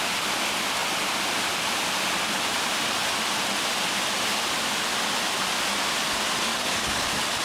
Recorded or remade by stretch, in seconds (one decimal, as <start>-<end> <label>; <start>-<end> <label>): 0.0-6.5 recorded; 6.5-7.4 remade